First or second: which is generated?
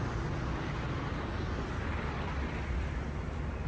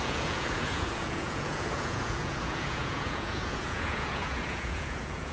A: second